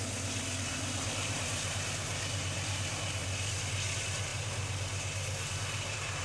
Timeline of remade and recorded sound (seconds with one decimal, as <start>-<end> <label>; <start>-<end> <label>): 0.0-0.7 recorded; 0.7-1.7 remade; 1.7-6.2 recorded